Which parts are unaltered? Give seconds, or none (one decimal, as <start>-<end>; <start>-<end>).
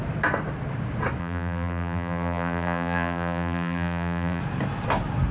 0.0-1.2; 4.4-5.3